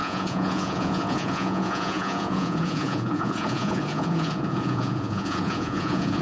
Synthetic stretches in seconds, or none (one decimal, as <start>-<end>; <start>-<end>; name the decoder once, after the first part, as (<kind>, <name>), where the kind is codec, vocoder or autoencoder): 0.0-6.2 (vocoder, Vocos)